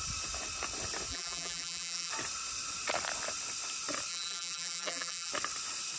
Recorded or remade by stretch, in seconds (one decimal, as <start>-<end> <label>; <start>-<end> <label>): 0.0-1.1 recorded; 1.1-2.1 remade; 2.1-4.1 recorded; 4.1-5.3 remade; 5.3-6.0 recorded